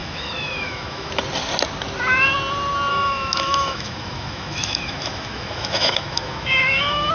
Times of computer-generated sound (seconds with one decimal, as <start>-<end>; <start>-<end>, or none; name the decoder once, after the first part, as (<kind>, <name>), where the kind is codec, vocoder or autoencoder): 0.0-1.1 (autoencoder, DAC-VAE); 2.9-7.1

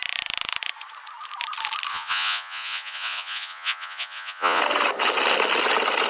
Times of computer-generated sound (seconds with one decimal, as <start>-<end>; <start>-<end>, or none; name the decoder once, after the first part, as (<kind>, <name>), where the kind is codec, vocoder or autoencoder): 1.9-4.6 (vocoder, Vocos)

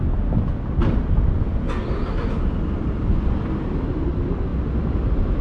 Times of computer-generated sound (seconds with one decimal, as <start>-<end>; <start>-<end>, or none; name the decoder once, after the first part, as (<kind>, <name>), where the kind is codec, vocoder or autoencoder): none

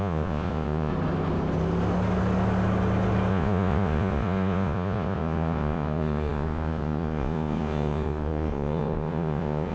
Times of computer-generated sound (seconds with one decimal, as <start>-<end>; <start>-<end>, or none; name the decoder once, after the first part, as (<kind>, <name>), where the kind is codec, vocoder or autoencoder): 0.0-0.9 (vocoder, Vocos); 3.3-9.7

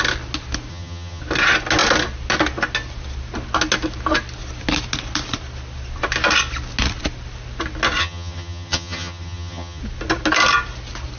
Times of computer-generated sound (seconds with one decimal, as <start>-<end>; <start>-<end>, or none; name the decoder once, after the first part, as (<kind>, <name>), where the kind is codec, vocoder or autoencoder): 0.7-1.2 (vocoder, HiFi-GAN); 8.0-9.8

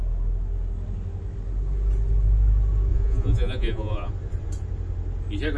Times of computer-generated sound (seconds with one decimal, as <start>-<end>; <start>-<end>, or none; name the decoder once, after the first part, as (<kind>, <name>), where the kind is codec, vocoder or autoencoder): 2.9-4.1 (vocoder, Vocos)